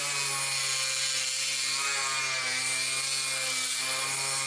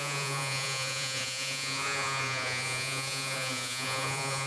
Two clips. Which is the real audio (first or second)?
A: first